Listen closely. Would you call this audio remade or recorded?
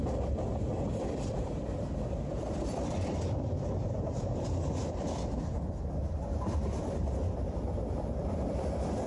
remade